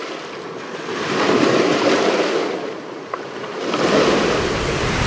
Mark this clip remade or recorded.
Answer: recorded